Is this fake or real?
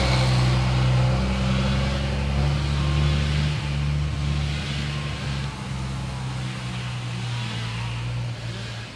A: real